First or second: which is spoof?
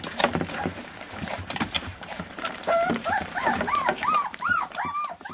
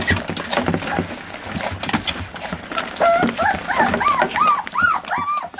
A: first